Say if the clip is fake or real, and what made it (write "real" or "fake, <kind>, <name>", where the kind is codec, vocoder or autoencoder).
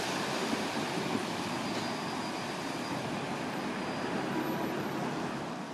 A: real